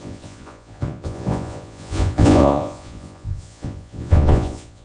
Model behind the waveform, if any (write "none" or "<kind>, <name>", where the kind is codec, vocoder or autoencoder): vocoder, Vocos